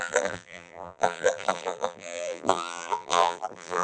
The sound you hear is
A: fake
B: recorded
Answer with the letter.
A